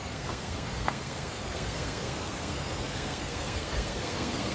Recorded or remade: remade